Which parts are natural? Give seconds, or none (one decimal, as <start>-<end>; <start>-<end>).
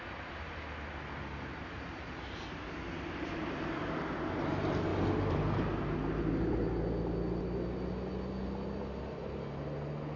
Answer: 0.0-10.2